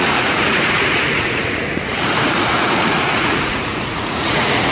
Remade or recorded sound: remade